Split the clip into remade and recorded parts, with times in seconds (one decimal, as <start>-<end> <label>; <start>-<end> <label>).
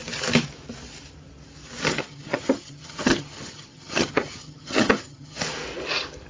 0.0-1.9 recorded; 1.9-5.4 remade; 5.4-6.3 recorded